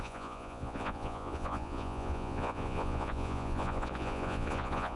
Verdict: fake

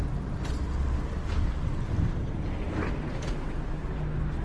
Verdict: real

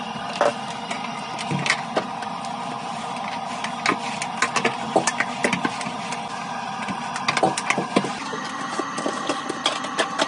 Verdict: real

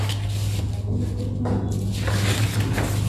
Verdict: real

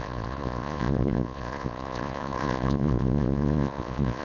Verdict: fake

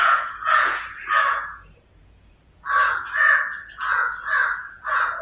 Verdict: fake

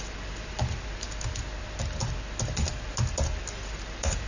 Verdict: real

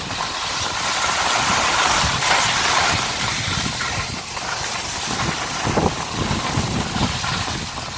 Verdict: real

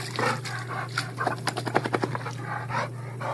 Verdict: real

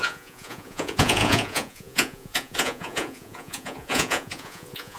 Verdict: fake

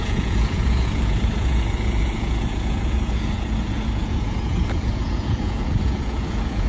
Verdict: fake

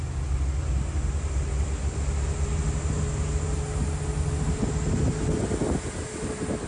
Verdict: real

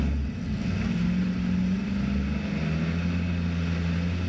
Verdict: real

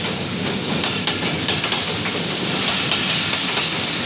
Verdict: real